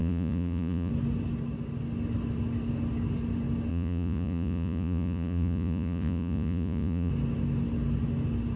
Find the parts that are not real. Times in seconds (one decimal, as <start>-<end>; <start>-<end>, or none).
0.0-0.9; 3.7-7.1